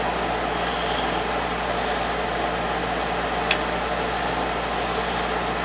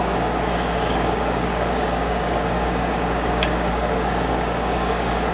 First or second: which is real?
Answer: first